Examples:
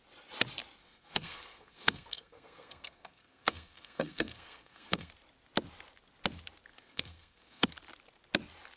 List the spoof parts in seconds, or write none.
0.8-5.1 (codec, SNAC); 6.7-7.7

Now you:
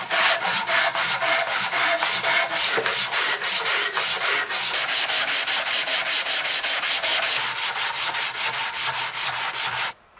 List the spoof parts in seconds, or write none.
0.0-7.1 (vocoder, BigVGAN v2); 7.8-10.2